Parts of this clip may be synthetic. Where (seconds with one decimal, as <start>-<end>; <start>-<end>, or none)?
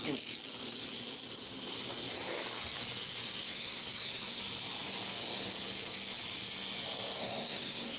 3.4-4.4; 7.2-8.0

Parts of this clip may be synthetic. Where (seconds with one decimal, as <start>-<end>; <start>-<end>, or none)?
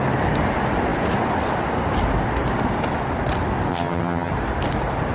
3.7-4.3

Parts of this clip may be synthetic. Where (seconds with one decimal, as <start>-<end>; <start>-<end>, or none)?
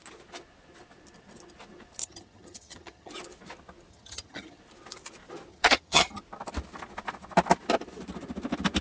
2.0-3.1; 3.9-4.6; 5.5-6.2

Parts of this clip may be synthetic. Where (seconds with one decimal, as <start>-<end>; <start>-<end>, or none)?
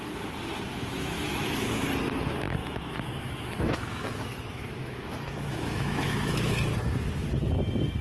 0.7-1.9; 2.6-6.5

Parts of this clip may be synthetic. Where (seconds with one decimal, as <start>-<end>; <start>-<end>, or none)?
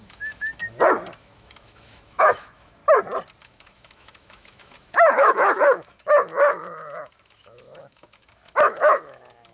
0.0-0.6; 1.2-2.8; 3.4-9.5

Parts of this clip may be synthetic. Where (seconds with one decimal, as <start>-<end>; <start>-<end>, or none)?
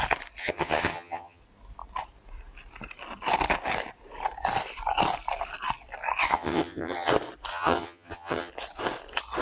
0.4-1.4; 6.3-7.1; 7.5-8.5